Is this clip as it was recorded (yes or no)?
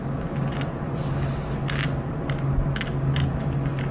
yes